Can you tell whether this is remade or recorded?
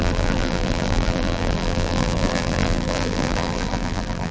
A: remade